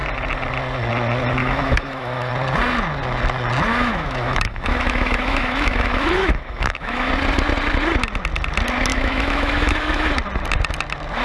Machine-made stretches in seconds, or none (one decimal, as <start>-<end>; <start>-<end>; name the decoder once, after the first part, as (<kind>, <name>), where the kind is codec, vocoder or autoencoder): 1.4-2.3 (autoencoder, DAC-VAE); 3.7-7.1; 8.9-10.1